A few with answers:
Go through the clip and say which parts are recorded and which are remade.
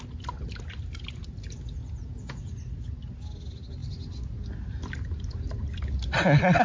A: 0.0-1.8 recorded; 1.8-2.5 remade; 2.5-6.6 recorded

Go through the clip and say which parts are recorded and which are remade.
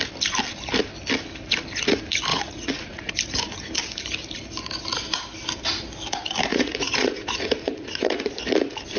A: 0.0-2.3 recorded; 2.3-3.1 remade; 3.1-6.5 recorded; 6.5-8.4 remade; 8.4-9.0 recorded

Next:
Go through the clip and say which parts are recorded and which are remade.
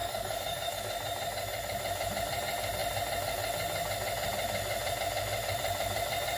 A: 0.0-0.8 remade; 0.8-6.4 recorded